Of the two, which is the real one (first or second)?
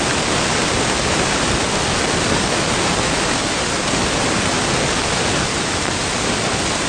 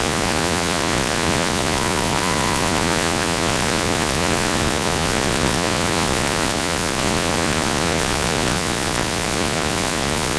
first